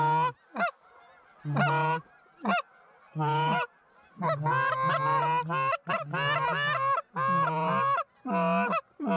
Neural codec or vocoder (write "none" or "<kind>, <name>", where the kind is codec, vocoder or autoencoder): none